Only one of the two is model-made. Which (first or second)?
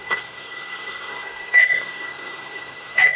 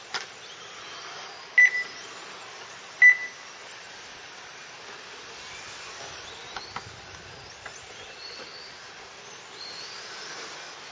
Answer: first